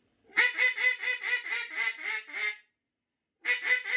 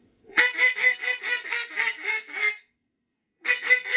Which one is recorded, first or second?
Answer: first